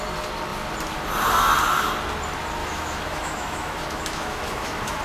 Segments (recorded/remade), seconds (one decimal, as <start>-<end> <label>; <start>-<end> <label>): 0.0-2.6 recorded; 2.6-5.0 remade